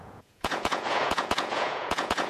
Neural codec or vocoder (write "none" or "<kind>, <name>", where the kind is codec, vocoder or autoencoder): vocoder, Vocos